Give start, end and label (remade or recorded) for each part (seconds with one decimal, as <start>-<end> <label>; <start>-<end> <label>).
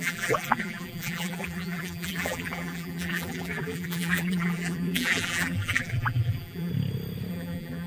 0.0-6.7 remade; 6.7-7.3 recorded; 7.3-7.9 remade